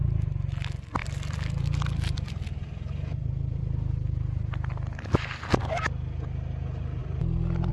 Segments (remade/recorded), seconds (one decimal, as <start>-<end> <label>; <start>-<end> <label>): 0.0-1.0 recorded; 1.0-5.6 remade; 5.6-7.0 recorded; 7.0-7.7 remade